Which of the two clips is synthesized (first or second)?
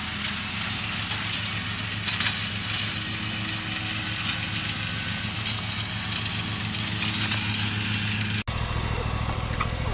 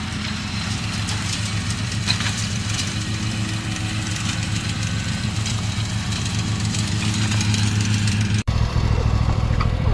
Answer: second